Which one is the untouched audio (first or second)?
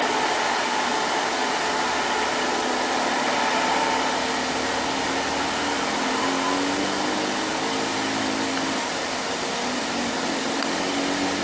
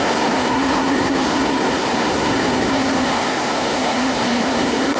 first